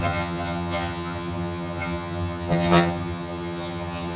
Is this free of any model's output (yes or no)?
no